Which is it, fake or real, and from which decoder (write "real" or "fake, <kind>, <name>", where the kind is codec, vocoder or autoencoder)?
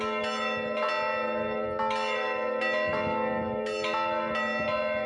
real